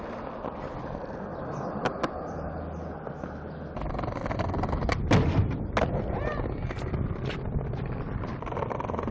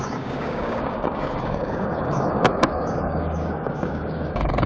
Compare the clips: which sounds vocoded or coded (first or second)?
second